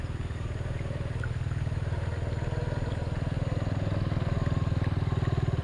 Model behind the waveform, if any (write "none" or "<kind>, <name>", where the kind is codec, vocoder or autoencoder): none